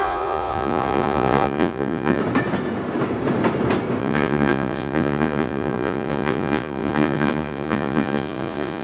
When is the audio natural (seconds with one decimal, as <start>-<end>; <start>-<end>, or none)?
2.2-4.0